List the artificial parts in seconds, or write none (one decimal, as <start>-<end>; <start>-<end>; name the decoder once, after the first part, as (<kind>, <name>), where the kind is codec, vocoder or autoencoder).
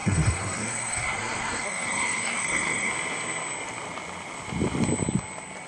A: 0.0-2.9 (codec, SNAC)